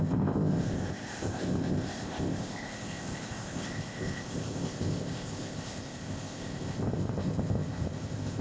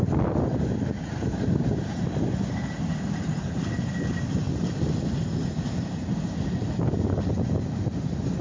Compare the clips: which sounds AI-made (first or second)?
first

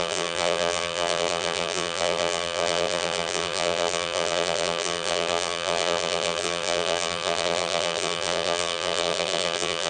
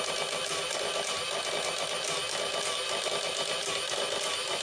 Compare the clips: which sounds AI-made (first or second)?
first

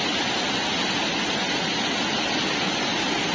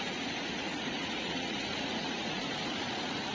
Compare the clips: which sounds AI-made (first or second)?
second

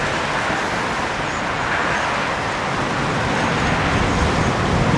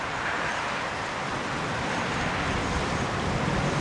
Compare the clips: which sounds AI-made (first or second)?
second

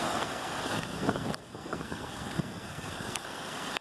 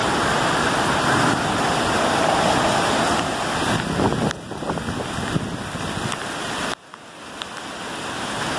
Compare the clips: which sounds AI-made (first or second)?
first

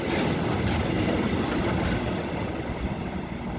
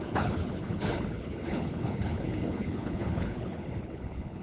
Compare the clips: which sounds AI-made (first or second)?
second